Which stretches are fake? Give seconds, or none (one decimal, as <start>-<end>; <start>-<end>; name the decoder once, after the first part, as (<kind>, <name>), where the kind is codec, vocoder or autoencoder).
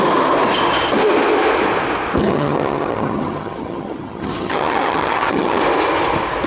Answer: 2.2-5.6 (vocoder, HiFi-GAN)